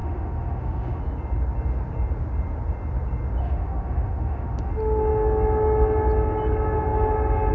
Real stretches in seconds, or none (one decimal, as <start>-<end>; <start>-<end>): 1.0-3.4; 4.7-7.5